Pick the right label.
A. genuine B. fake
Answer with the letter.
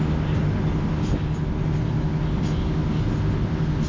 A